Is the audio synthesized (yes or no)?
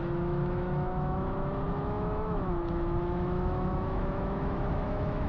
yes